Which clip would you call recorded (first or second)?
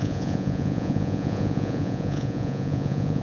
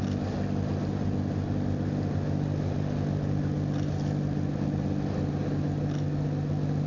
second